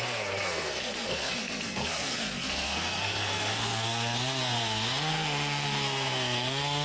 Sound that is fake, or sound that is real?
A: fake